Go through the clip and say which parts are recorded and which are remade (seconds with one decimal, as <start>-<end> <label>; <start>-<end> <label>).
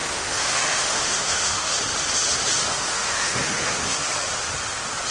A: 0.0-1.8 remade; 1.8-2.8 recorded; 2.8-4.1 remade; 4.1-5.1 recorded